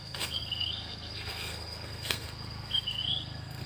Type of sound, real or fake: fake